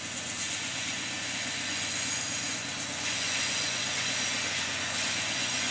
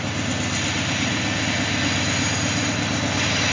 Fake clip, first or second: first